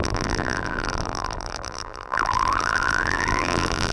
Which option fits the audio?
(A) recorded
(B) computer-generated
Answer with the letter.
B